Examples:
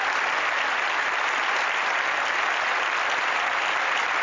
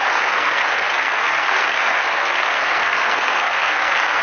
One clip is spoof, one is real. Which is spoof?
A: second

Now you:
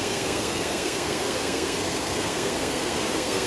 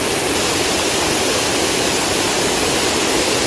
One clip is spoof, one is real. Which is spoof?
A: first